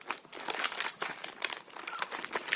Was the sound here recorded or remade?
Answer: recorded